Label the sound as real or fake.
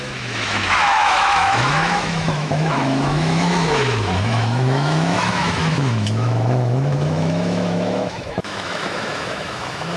fake